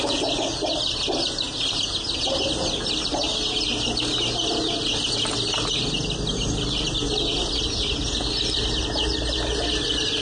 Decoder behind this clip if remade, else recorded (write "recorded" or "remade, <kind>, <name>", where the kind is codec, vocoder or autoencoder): recorded